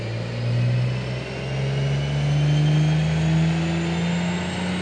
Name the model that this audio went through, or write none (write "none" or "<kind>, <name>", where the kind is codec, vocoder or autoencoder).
none